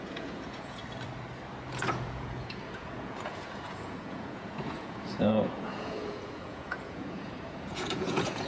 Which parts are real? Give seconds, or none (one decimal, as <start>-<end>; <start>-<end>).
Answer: 0.8-1.8